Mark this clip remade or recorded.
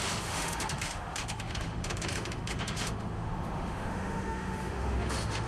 remade